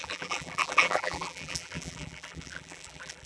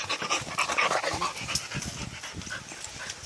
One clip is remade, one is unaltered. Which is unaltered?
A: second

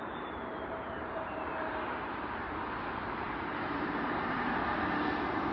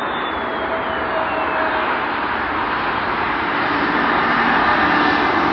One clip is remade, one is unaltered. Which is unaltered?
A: second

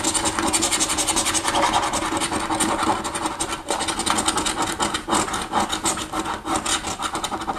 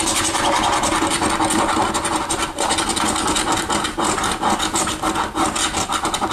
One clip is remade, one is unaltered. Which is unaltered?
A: first